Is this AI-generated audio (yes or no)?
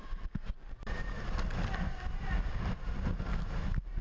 no